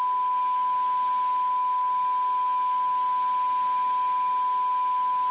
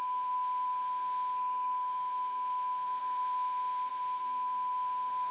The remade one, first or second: second